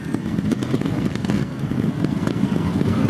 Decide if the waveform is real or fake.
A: fake